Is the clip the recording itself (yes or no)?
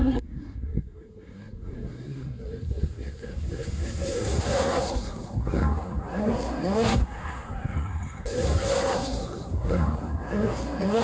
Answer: no